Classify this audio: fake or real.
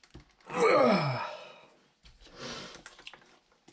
real